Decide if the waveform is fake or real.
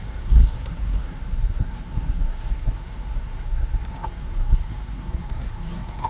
fake